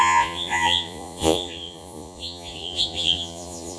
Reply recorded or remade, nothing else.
remade